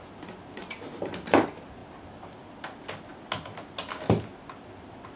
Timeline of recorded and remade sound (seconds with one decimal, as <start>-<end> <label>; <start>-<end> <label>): 0.0-5.2 recorded